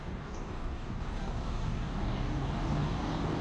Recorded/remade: remade